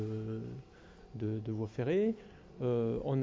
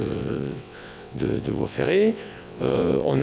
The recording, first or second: first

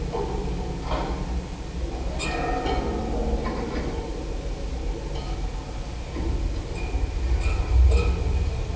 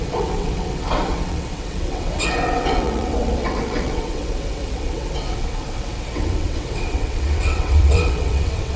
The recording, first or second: first